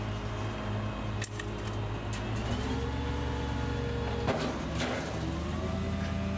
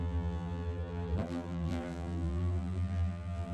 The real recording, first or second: first